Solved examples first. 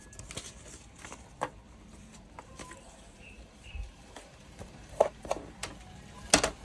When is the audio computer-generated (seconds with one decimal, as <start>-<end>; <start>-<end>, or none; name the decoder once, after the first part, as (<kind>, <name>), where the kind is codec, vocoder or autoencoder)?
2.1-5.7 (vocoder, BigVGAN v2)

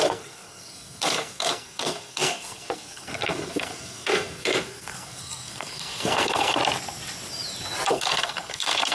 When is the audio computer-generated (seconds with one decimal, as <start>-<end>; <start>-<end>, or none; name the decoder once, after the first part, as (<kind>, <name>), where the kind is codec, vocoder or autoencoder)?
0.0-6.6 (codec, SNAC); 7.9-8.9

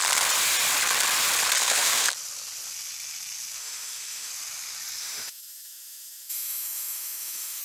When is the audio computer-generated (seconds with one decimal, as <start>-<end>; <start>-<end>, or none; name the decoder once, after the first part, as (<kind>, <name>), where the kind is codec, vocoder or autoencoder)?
1.6-2.1 (autoencoder, DAC-VAE); 3.6-4.3; 5.0-7.6